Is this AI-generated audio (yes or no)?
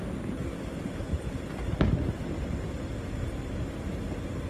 no